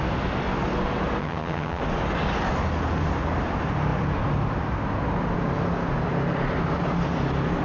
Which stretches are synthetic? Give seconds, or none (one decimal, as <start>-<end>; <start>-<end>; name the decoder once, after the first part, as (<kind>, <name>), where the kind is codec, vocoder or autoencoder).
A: 1.2-1.8 (vocoder, HiFi-GAN)